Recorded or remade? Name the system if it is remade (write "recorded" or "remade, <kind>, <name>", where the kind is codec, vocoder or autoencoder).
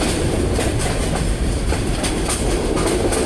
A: recorded